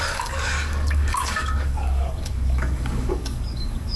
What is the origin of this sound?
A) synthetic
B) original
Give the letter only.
A